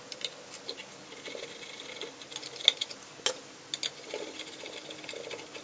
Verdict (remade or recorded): recorded